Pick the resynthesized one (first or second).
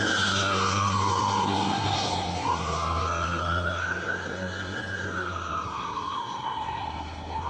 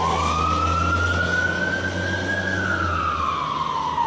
first